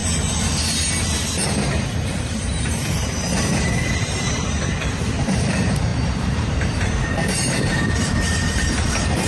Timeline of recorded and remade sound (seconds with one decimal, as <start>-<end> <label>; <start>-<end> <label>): 0.0-2.1 recorded; 2.1-9.3 remade